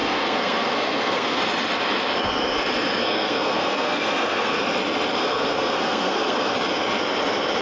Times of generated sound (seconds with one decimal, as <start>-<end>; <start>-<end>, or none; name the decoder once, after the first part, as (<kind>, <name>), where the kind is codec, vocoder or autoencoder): 0.0-1.4 (codec, SNAC); 3.0-4.6; 5.2-6.5